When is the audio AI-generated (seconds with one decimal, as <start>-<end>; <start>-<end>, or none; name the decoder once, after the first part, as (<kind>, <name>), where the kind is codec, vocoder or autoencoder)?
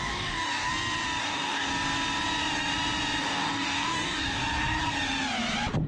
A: 0.0-0.7 (codec, DAC); 1.2-1.7; 3.2-4.4